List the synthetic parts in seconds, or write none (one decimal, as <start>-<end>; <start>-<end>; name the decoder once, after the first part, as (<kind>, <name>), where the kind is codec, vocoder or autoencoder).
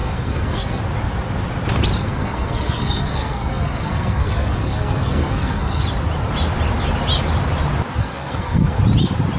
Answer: 0.0-0.8 (codec, SNAC); 2.0-5.8; 8.0-8.8